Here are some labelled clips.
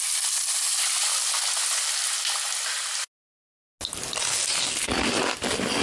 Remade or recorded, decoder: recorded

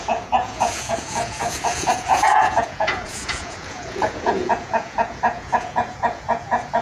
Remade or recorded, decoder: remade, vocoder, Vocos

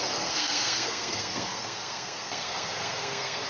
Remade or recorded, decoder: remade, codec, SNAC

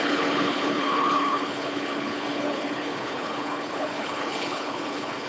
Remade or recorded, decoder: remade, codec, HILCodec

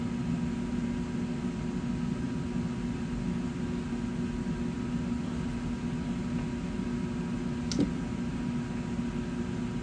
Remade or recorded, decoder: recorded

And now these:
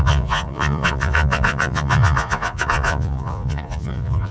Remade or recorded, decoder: remade, vocoder, Vocos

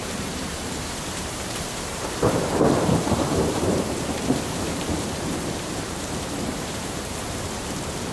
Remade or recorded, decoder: remade, vocoder, BigVGAN v2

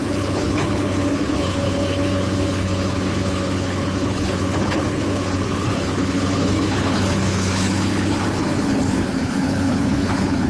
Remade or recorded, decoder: remade, codec, HILCodec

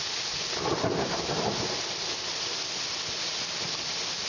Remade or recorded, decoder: recorded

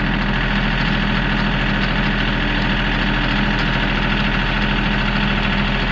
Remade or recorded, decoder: recorded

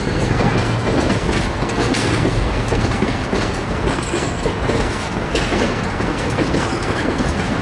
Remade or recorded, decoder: remade, codec, SNAC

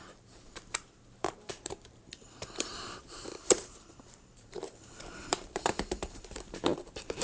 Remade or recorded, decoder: remade, vocoder, BigVGAN v2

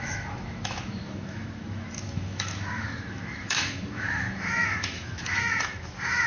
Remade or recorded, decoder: remade, autoencoder, DAC-VAE